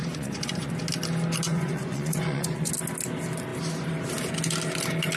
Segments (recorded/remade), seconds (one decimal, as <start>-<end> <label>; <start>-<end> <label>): 0.0-0.7 remade; 0.7-1.5 recorded; 1.5-2.7 remade; 2.7-5.2 recorded